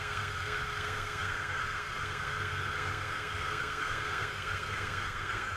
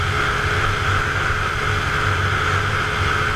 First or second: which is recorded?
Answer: second